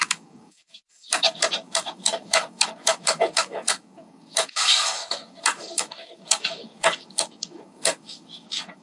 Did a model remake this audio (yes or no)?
yes